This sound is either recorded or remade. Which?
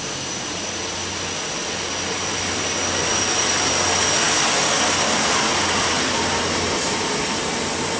recorded